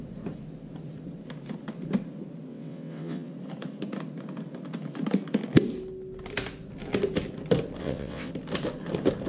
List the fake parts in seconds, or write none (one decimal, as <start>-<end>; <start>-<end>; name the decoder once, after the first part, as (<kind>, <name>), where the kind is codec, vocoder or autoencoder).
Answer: 2.5-3.3 (vocoder, WaveNeXt); 7.8-8.3